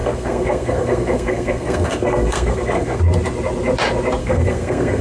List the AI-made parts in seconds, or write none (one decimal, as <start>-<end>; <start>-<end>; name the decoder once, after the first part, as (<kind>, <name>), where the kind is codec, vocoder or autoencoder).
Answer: 0.0-3.0 (codec, SNAC); 4.2-5.0